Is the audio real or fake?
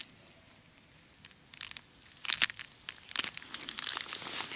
real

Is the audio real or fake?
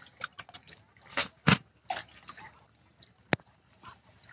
real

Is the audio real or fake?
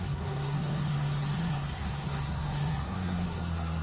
fake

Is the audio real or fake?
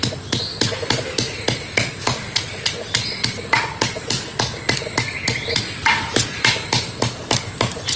real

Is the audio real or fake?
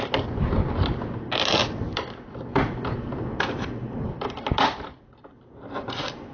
real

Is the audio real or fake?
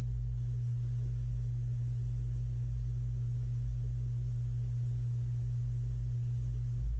real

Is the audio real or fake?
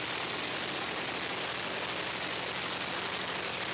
real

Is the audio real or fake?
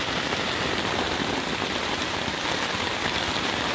real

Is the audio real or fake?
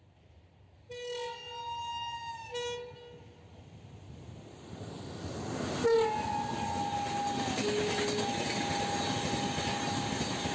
real